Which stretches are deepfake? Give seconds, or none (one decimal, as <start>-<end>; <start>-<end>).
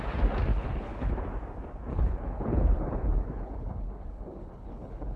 0.5-1.2; 1.9-5.2